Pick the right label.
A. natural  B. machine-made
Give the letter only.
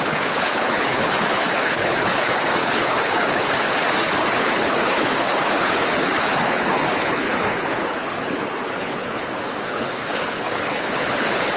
B